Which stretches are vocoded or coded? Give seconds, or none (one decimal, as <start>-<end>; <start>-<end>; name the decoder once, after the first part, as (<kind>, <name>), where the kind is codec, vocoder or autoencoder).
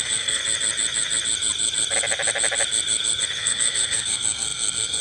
0.0-0.4 (codec, SNAC); 3.4-5.0